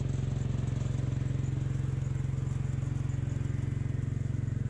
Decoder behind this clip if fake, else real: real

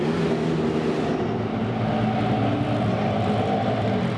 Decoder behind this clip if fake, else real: real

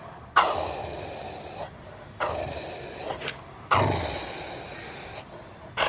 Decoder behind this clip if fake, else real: real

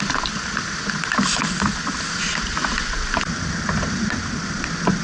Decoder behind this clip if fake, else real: real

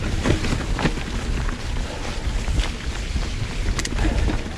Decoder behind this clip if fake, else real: real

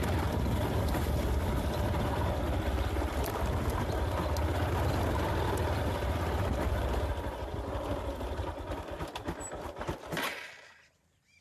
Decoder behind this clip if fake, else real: real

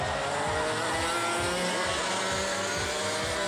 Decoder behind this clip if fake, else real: real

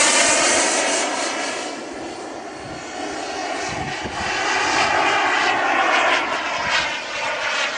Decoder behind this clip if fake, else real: real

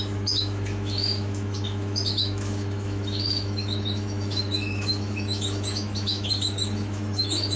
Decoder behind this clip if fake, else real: fake, autoencoder, DAC-VAE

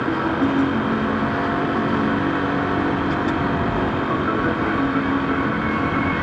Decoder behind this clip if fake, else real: real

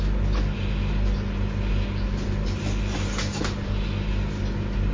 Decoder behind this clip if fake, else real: real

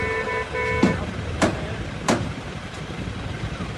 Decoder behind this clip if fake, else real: fake, vocoder, BigVGAN v2